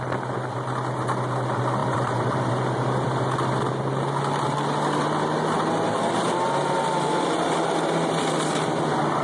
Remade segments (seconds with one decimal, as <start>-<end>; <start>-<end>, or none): 1.8-2.5